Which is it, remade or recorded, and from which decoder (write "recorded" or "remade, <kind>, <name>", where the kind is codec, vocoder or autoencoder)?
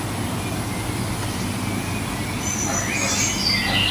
recorded